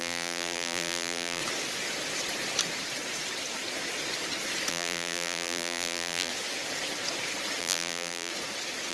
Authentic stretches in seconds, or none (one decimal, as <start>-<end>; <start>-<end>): 1.4-4.7; 6.3-7.6; 8.3-8.9